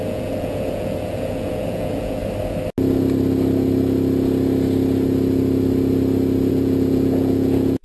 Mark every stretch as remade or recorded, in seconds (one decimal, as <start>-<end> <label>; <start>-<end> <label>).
0.0-2.2 remade; 2.2-6.5 recorded; 6.5-7.8 remade